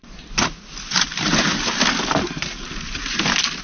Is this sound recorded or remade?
recorded